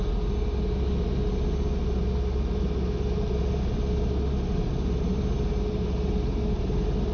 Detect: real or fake real